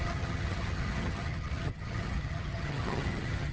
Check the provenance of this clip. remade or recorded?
remade